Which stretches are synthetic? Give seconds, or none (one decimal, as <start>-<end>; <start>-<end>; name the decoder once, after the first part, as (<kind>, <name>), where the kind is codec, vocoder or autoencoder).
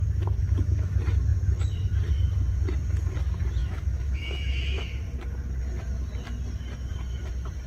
0.4-0.9 (autoencoder, DAC-VAE); 3.6-4.8